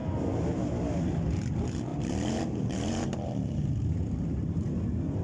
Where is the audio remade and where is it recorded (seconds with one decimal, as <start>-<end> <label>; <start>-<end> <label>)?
0.0-1.9 recorded; 1.9-4.8 remade; 4.8-5.2 recorded